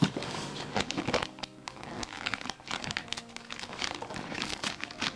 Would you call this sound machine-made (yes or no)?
yes